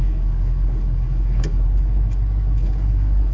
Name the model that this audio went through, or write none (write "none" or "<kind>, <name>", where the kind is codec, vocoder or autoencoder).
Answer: codec, DAC